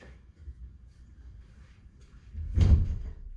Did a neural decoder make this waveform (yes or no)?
yes